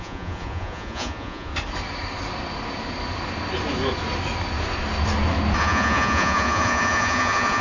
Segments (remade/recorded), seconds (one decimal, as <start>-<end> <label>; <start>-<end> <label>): 0.0-1.5 remade; 1.5-5.6 recorded; 5.6-7.6 remade